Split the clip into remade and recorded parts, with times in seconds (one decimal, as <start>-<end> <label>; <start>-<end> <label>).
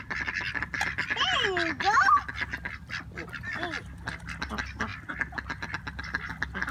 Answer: 0.0-6.7 recorded